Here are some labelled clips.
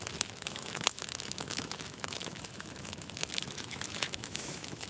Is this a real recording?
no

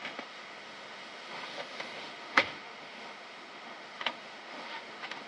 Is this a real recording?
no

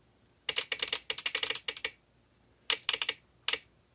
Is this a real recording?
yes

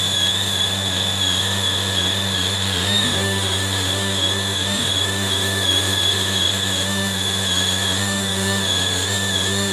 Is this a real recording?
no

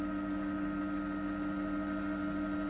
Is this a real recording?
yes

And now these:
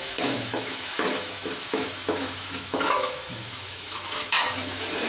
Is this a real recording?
no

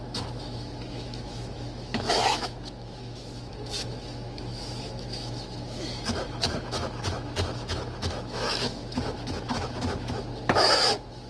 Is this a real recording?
no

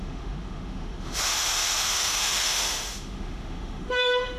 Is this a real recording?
no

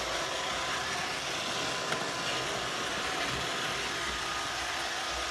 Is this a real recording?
yes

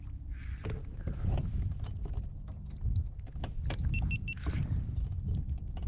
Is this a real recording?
yes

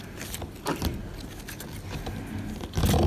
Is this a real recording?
yes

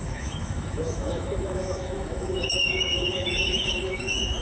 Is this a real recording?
no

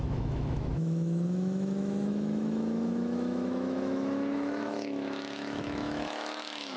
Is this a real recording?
no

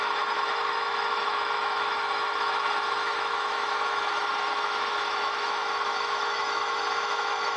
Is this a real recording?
no